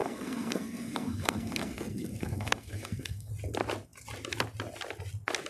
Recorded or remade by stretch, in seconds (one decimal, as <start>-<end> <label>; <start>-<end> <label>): 0.0-3.3 remade; 3.3-5.5 recorded